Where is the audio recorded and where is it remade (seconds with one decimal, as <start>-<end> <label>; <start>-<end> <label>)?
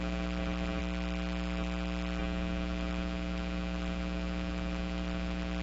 0.0-0.8 recorded; 0.8-2.2 remade; 2.2-5.6 recorded